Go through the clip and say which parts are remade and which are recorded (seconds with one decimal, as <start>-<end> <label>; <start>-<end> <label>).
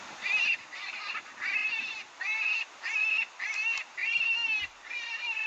0.0-1.6 recorded; 1.6-2.2 remade; 2.2-4.0 recorded; 4.0-5.5 remade